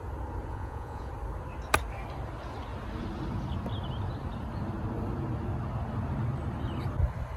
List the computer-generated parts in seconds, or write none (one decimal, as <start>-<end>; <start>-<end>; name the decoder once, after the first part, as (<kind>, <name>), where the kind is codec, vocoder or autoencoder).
0.5-1.1 (vocoder, Vocos)